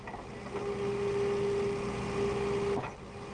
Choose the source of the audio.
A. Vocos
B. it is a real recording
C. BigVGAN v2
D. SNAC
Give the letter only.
B